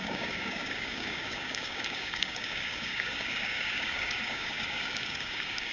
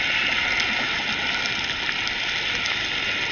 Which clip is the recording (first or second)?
second